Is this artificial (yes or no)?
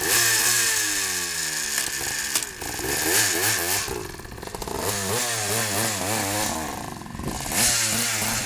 no